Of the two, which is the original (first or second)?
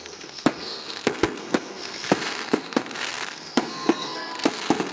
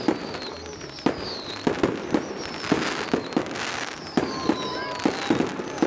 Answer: second